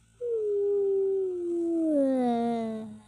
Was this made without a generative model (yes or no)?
yes